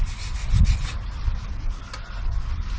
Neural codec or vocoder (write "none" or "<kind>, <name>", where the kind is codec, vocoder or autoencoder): none